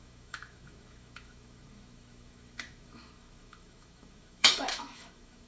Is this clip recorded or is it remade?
remade